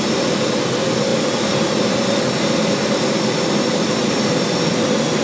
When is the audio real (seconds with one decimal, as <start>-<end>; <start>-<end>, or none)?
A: 0.0-5.2